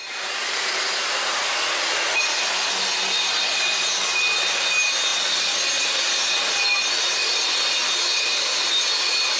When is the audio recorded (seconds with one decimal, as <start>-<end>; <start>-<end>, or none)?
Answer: 1.3-9.4